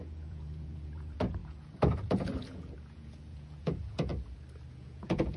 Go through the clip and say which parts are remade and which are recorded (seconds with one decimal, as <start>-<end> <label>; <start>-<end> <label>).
0.0-4.1 remade; 4.1-4.7 recorded; 4.7-5.4 remade